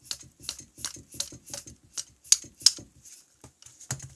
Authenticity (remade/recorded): recorded